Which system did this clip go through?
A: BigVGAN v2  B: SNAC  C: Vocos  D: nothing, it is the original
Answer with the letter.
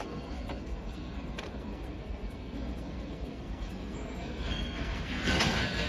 B